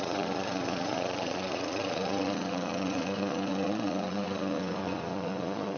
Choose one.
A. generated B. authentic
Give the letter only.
A